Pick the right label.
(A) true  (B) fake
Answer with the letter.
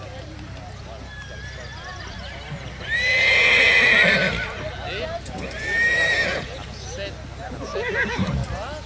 A